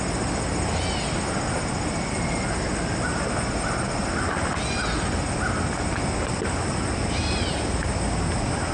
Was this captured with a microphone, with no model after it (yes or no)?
yes